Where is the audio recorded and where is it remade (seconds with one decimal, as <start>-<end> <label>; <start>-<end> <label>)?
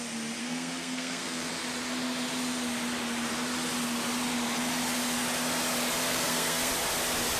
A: 0.0-0.4 recorded; 0.4-1.5 remade; 1.5-6.1 recorded; 6.1-6.7 remade; 6.7-7.4 recorded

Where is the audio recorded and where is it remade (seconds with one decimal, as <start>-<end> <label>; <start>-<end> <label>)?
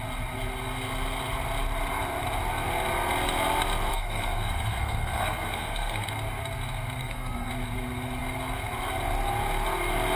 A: 0.0-3.9 recorded; 3.9-6.1 remade; 6.1-7.0 recorded; 7.0-7.5 remade; 7.5-10.2 recorded